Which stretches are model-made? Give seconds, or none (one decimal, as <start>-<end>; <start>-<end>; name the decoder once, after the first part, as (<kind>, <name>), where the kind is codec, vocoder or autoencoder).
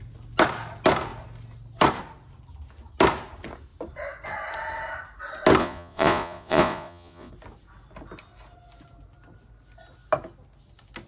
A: 5.6-7.3 (vocoder, Vocos)